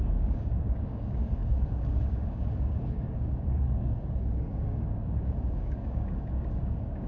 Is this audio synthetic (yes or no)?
yes